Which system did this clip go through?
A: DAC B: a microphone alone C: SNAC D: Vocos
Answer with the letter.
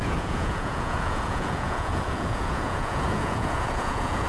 D